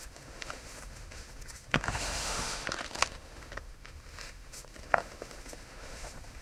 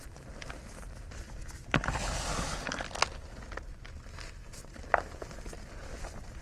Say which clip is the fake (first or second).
first